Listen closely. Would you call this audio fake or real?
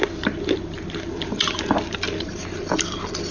real